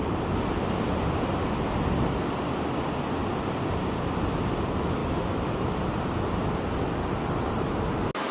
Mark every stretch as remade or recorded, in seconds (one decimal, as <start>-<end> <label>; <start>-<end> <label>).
0.0-5.0 recorded; 5.0-5.7 remade; 5.7-8.3 recorded